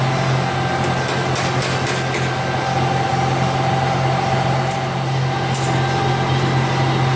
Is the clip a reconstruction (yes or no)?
no